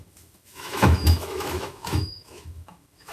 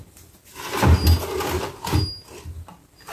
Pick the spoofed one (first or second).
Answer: first